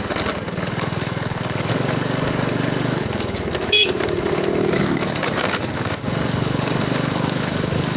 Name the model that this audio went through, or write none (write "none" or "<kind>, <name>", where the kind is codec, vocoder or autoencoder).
codec, DAC